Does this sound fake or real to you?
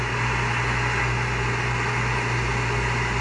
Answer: real